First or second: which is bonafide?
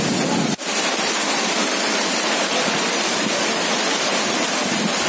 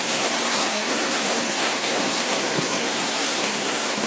first